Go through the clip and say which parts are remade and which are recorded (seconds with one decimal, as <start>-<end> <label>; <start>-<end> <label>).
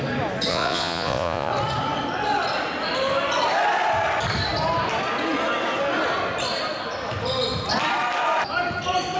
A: 0.0-0.5 recorded; 0.5-1.5 remade; 1.5-9.2 recorded